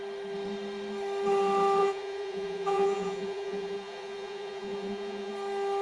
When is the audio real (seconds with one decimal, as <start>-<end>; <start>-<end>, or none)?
0.0-1.8; 5.3-5.8